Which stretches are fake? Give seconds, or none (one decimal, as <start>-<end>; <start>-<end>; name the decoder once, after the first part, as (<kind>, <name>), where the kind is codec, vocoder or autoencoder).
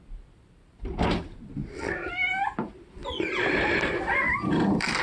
0.0-1.6 (vocoder, BigVGAN v2); 2.4-5.0